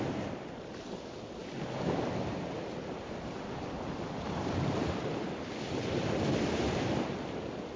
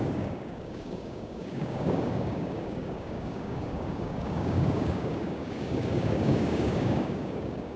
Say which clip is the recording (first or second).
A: first